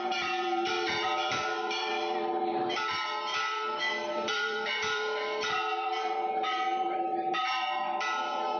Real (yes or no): no